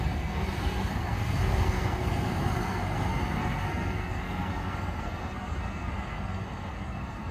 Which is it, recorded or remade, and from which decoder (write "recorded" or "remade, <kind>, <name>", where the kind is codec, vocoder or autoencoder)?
remade, codec, SNAC